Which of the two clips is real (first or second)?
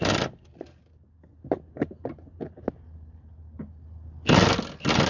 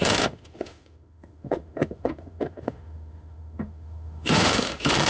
first